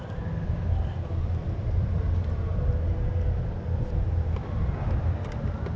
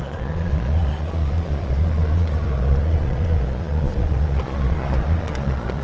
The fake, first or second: second